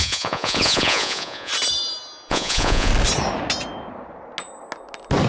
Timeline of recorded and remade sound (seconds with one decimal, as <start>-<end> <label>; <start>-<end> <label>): 0.0-1.5 remade; 1.5-2.3 recorded; 2.3-2.9 remade; 2.9-5.3 recorded